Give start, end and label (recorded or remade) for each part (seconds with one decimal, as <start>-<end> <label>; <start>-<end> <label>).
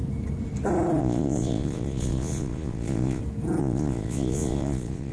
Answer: 0.0-1.0 recorded; 1.0-3.2 remade; 3.2-3.6 recorded; 3.6-5.1 remade